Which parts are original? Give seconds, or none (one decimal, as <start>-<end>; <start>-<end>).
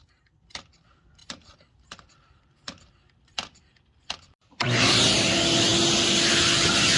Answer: 0.0-1.2; 5.3-7.0